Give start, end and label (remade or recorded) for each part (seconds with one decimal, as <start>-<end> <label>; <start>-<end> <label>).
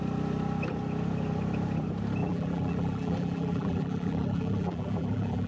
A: 0.0-2.2 recorded; 2.2-5.5 remade